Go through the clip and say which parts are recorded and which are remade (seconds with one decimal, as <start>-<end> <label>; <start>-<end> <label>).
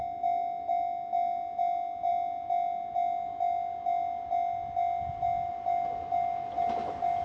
0.0-7.2 recorded